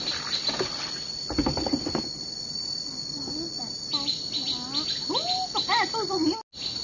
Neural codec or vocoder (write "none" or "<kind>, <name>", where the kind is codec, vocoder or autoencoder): none